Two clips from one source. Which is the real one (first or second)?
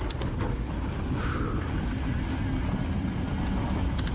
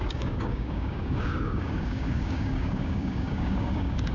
first